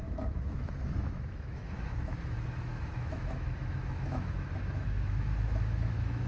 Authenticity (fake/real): fake